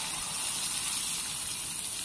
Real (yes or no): yes